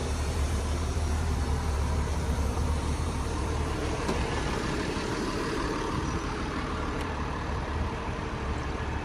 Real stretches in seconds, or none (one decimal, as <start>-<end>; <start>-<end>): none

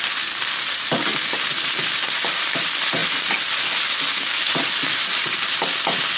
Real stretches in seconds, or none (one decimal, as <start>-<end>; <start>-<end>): 0.0-6.2

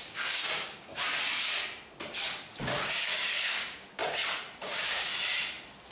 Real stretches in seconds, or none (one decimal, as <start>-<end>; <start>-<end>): 0.9-2.9; 4.0-4.6; 5.1-5.9